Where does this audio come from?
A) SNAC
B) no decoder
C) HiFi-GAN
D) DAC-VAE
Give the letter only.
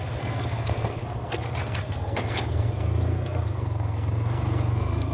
A